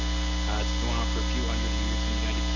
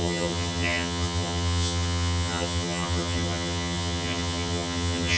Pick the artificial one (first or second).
second